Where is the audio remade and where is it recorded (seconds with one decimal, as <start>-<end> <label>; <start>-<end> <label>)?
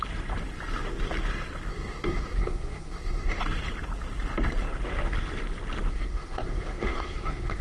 0.0-1.7 recorded; 1.7-3.4 remade; 3.4-5.9 recorded; 5.9-7.6 remade